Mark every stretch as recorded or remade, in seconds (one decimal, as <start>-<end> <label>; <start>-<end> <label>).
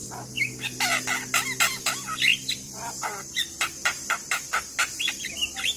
0.0-2.3 recorded; 2.3-5.2 remade; 5.2-5.8 recorded